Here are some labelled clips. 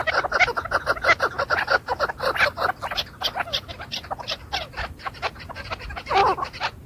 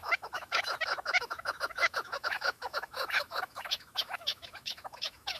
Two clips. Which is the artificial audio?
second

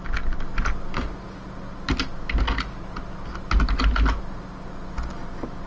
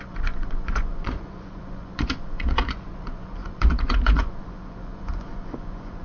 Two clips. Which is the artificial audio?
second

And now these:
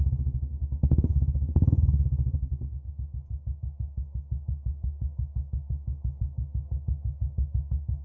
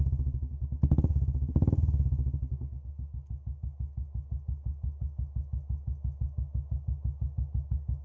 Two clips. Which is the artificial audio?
first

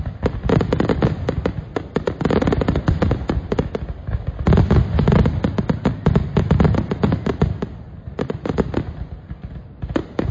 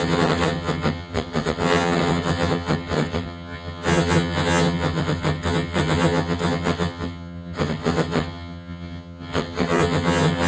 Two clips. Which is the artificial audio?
second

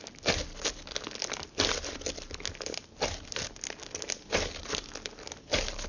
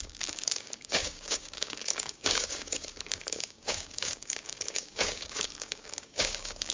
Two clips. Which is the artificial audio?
second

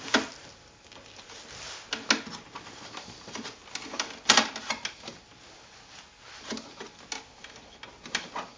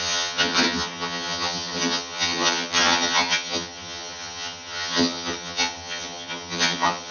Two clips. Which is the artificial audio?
second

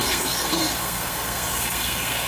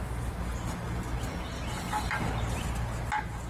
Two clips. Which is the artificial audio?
first